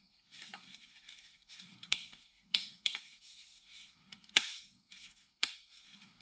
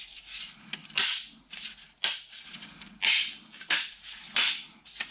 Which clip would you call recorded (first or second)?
second